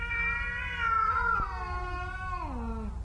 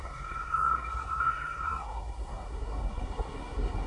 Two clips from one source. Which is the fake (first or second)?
second